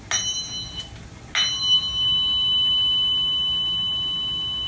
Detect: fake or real real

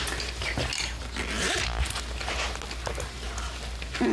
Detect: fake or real real